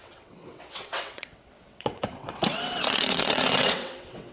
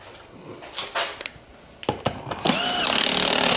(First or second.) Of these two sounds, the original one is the second